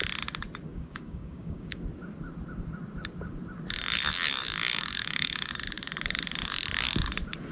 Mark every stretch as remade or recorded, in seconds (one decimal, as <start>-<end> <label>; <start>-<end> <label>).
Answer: 0.0-0.7 recorded; 0.7-1.8 remade; 1.8-4.6 recorded; 4.6-5.5 remade; 5.5-7.5 recorded